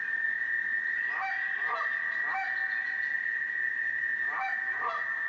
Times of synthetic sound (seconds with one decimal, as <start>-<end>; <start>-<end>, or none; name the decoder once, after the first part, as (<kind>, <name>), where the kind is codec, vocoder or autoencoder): none